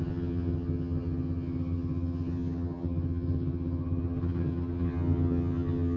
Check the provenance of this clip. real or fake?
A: fake